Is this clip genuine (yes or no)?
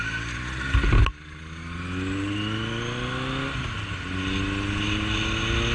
yes